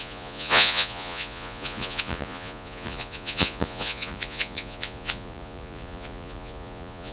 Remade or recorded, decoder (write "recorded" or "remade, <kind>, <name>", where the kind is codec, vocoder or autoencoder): remade, vocoder, Vocos